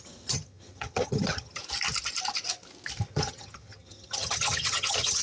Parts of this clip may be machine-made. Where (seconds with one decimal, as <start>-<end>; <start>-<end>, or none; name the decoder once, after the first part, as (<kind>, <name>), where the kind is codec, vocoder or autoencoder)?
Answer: 0.0-1.6 (vocoder, HiFi-GAN); 3.1-5.2